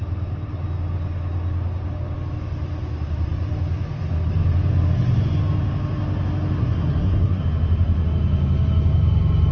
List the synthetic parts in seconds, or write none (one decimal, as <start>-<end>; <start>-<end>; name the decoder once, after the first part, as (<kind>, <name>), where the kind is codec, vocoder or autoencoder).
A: 6.6-7.4 (codec, SNAC)